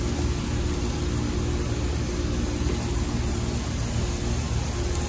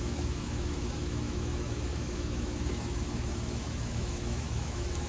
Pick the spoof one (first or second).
second